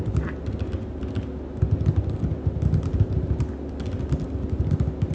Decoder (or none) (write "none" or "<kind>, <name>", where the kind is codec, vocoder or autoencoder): none